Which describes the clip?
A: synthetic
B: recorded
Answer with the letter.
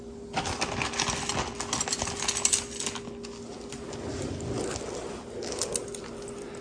B